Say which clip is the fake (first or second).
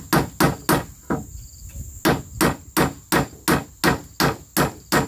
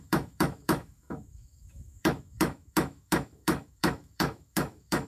second